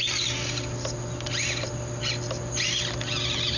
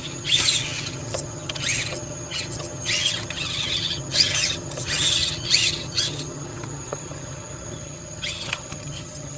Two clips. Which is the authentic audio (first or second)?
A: first